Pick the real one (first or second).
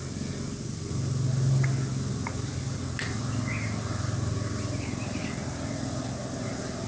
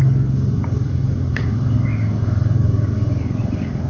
first